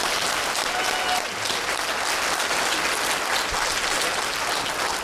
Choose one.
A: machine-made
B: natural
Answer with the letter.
B